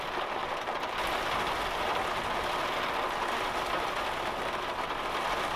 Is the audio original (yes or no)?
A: yes